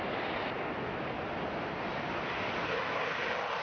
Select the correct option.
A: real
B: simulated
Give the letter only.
A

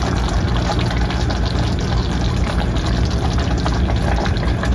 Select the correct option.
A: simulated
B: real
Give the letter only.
B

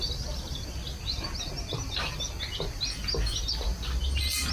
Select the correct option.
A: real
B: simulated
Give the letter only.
A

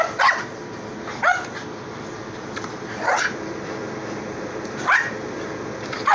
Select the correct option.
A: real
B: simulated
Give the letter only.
A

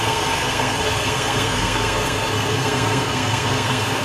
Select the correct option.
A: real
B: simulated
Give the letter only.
B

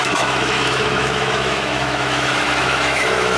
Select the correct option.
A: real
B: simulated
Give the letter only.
B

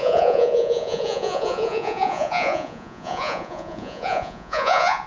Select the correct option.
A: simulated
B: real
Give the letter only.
A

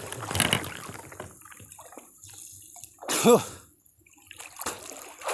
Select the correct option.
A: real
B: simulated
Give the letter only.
A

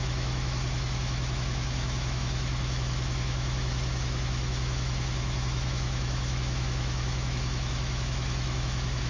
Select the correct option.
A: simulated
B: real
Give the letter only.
A